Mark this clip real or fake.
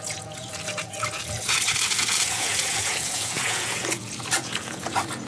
fake